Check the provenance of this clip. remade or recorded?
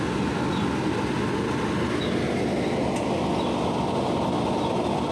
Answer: recorded